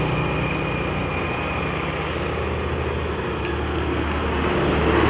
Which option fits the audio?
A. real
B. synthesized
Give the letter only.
A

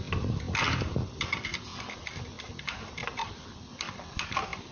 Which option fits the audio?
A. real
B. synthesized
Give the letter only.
A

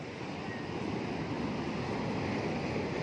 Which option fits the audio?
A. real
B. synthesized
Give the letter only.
A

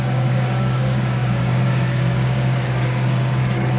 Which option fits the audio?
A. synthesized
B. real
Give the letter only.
A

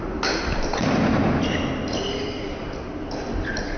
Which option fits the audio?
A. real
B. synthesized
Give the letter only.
A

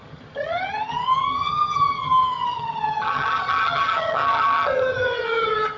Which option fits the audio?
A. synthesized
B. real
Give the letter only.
A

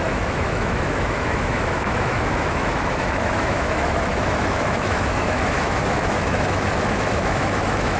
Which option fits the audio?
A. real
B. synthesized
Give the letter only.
B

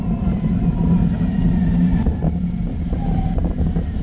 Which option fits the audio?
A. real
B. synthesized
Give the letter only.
A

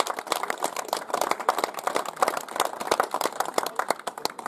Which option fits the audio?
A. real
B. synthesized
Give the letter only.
A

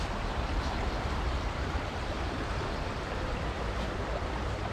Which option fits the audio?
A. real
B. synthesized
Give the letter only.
B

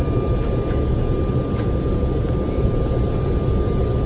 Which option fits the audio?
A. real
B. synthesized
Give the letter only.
A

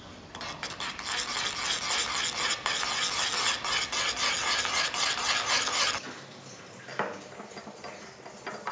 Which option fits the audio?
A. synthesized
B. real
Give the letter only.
B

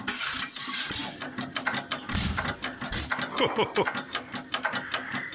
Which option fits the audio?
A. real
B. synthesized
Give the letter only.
B